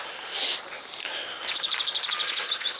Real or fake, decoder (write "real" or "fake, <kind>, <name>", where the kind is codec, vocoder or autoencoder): real